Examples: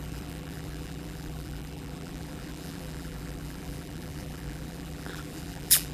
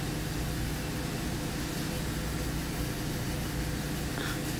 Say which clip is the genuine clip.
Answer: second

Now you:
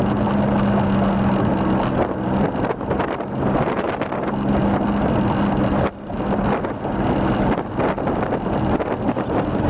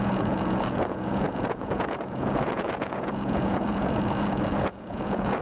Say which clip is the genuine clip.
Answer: first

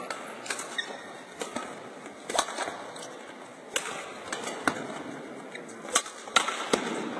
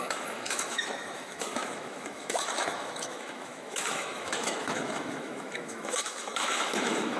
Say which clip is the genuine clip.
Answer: first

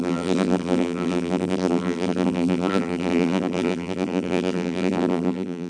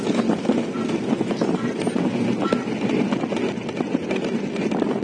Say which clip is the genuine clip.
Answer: second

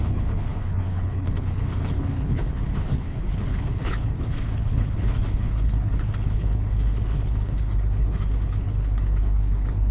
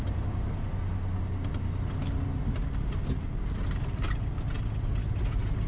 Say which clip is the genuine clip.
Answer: second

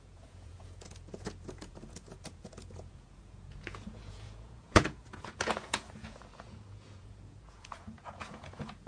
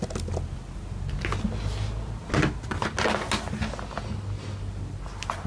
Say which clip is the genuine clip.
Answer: second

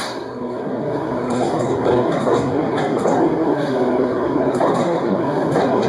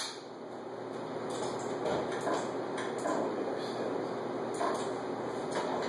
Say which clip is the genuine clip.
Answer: second